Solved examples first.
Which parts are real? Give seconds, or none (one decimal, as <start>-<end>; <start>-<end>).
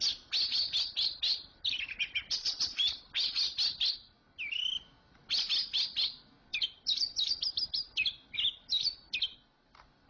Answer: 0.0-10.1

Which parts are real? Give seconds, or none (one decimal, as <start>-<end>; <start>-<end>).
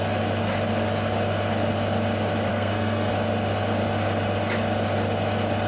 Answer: 0.0-2.5; 3.1-5.7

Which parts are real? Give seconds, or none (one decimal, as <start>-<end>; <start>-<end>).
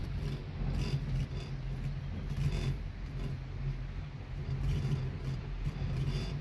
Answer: 0.4-3.8